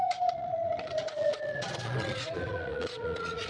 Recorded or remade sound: remade